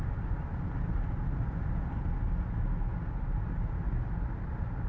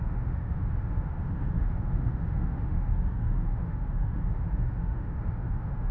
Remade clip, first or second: second